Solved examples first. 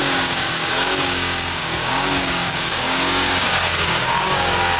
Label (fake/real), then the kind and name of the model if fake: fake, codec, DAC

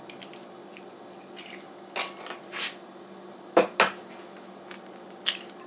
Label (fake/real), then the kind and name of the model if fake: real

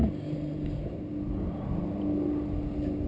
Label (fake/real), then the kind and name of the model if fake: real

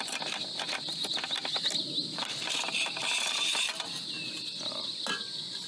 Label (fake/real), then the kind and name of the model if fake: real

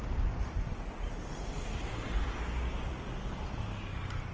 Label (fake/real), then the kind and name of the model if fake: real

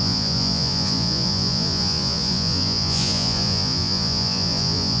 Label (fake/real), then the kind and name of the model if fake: fake, vocoder, Vocos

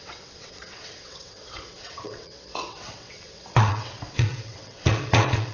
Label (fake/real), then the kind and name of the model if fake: fake, vocoder, WaveNeXt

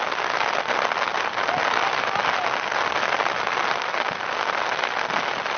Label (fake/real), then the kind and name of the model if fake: real